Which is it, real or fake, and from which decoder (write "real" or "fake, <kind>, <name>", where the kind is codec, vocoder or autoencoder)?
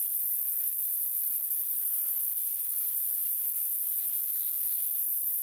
fake, codec, SNAC